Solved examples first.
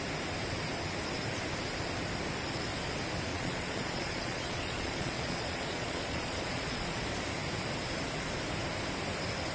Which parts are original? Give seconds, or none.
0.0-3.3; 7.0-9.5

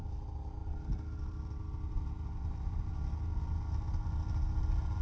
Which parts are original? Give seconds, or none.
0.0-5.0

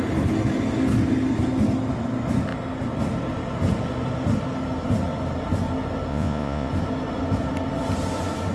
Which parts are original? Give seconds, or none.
0.0-6.1; 6.7-8.5

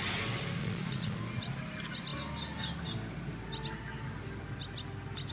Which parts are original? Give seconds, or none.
0.0-0.6; 1.2-5.3

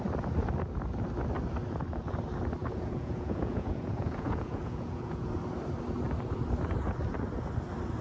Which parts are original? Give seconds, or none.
0.0-2.6; 5.3-8.0